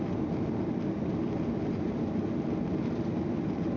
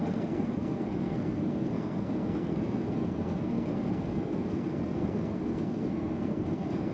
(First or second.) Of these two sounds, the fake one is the second